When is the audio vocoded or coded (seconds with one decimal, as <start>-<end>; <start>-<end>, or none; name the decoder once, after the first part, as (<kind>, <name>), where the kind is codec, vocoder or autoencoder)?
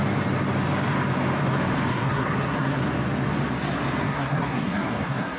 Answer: 1.9-2.8 (codec, SNAC); 4.0-5.4